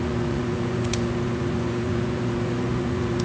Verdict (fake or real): fake